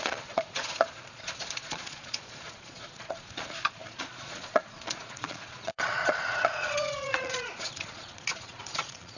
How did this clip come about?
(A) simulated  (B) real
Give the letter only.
A